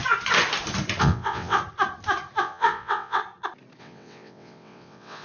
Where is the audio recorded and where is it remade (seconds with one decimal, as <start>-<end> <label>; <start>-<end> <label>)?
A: 0.0-1.0 recorded; 1.0-1.6 remade; 1.6-2.4 recorded; 2.4-3.2 remade; 3.2-3.8 recorded; 3.8-5.2 remade